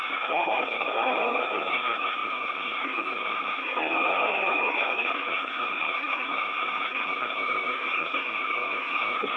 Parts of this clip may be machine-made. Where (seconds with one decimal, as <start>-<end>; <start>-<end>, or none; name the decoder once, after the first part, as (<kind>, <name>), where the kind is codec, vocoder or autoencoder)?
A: 0.0-9.4 (codec, SNAC)